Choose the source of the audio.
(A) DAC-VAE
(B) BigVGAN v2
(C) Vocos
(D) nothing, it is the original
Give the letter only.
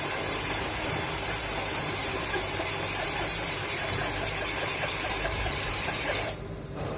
B